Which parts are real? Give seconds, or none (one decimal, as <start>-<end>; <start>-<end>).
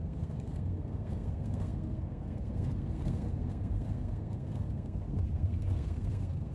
none